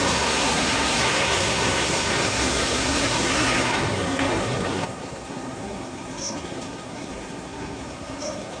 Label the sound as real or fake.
fake